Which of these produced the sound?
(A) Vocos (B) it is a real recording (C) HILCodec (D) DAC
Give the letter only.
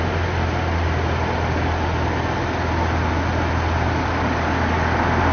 B